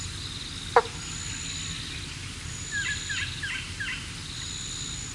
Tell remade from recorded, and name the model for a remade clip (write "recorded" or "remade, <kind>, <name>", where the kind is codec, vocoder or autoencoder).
recorded